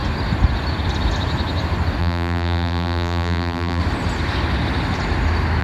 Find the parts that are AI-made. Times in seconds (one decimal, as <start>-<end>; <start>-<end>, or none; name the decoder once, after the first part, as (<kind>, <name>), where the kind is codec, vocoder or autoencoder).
2.0-3.8 (vocoder, BigVGAN v2)